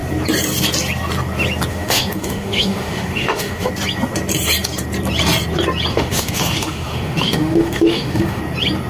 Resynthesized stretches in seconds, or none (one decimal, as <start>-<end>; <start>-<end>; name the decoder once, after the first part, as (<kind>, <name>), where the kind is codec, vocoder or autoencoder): 1.7-3.7 (autoencoder, DAC-VAE); 5.9-8.4